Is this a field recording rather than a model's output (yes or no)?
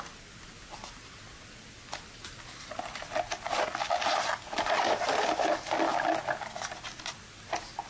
yes